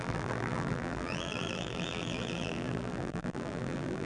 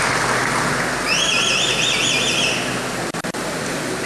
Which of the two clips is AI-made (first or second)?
first